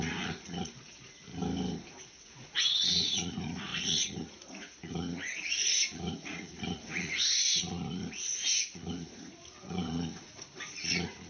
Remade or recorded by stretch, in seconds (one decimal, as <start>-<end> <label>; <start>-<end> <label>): 0.0-1.3 remade; 1.3-2.0 recorded; 2.0-11.3 remade